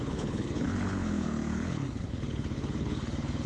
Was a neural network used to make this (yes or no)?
yes